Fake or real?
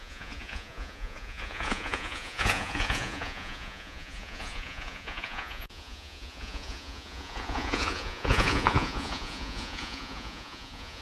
fake